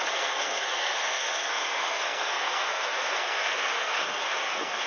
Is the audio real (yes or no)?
no